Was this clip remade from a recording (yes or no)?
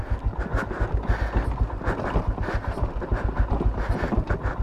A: no